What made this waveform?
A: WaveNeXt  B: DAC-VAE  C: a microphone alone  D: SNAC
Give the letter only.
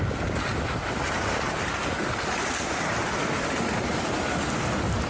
C